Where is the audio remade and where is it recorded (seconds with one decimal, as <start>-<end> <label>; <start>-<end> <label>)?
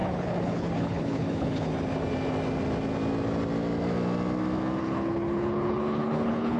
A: 0.0-1.7 remade; 1.7-4.8 recorded; 4.8-6.6 remade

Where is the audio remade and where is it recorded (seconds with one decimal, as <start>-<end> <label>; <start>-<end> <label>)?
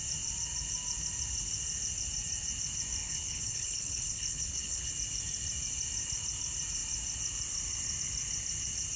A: 0.0-3.0 recorded; 3.0-4.9 remade; 4.9-9.0 recorded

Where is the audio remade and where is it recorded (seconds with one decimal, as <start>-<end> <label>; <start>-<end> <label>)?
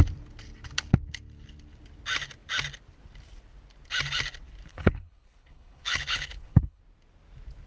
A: 0.0-4.7 recorded; 4.7-6.8 remade; 6.8-7.7 recorded